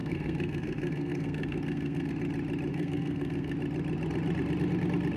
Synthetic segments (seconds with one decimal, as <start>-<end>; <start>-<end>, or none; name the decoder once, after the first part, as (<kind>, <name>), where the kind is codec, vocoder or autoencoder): 0.0-2.1 (codec, SNAC); 2.7-3.5